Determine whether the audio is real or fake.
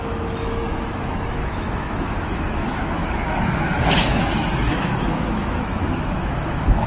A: fake